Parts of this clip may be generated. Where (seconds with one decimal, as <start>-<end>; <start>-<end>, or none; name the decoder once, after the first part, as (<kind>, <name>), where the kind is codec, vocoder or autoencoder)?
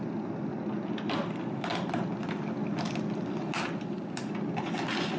none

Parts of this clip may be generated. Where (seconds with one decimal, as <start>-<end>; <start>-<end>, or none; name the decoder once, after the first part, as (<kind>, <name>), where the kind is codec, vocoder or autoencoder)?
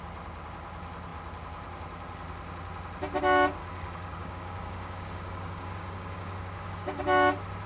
3.6-7.0 (codec, DAC)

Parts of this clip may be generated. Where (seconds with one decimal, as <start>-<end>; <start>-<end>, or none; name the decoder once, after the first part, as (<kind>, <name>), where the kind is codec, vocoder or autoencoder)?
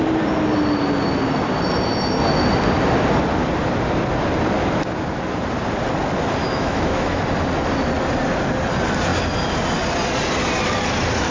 6.4-7.2 (autoencoder, DAC-VAE)